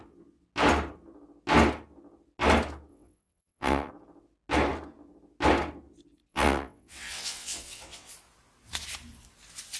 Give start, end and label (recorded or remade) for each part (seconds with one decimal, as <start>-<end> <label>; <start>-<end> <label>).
0.0-2.9 recorded; 2.9-3.9 remade; 3.9-6.3 recorded; 6.3-8.1 remade; 8.1-9.8 recorded